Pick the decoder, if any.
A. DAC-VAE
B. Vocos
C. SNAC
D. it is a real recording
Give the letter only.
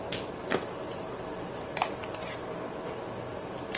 D